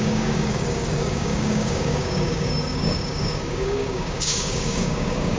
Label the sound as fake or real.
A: fake